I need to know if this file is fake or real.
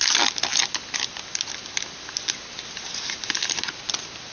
real